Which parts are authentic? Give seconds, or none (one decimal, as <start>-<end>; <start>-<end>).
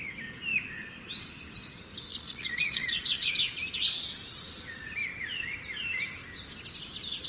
0.0-2.1; 3.3-7.3